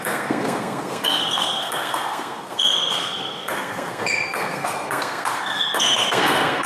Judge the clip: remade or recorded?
remade